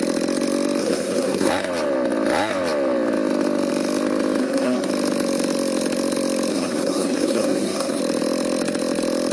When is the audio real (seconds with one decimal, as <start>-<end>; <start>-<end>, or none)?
0.0-0.8; 1.5-4.4; 4.9-6.5; 8.0-9.3